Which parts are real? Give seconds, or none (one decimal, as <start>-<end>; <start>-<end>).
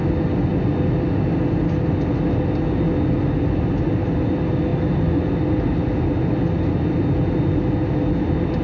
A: 0.0-8.6